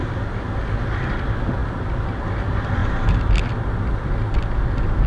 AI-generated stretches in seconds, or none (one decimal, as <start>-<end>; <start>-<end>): none